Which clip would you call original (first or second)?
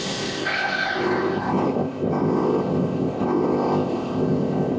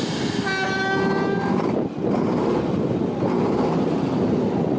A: second